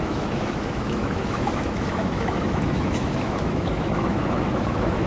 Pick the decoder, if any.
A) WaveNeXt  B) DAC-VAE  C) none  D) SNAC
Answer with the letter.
B